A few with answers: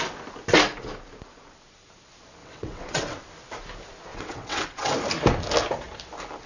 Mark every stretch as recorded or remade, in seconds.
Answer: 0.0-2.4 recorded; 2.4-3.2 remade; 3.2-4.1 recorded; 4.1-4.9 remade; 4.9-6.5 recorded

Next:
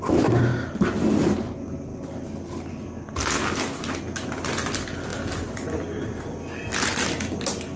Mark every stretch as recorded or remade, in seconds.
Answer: 0.0-7.8 recorded

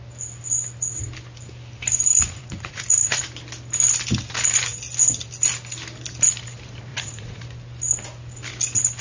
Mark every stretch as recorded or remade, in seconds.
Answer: 0.0-2.1 recorded; 2.1-3.2 remade; 3.2-6.9 recorded; 6.9-7.4 remade; 7.4-9.0 recorded

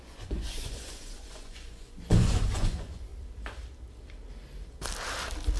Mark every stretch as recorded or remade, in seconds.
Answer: 0.0-3.1 remade; 3.1-5.6 recorded

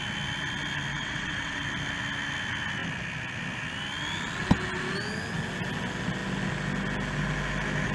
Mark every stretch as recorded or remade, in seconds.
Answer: 0.0-0.9 recorded; 0.9-1.6 remade; 1.6-7.9 recorded

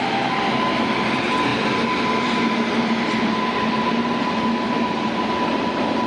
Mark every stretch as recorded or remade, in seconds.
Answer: 0.0-6.1 recorded

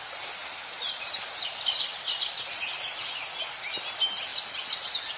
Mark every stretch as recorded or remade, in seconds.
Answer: 0.0-0.4 recorded; 0.4-3.1 remade; 3.1-5.2 recorded

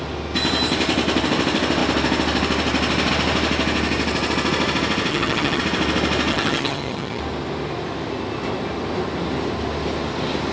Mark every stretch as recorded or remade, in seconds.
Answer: 0.0-5.1 recorded; 5.1-5.6 remade; 5.6-6.3 recorded; 6.3-7.2 remade; 7.2-10.5 recorded